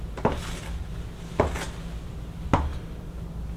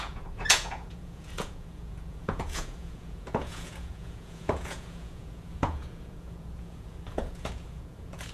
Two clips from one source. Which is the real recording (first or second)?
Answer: first